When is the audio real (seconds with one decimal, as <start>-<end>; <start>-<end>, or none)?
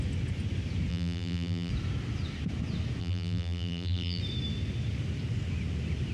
0.0-0.9; 1.7-3.0; 4.2-6.1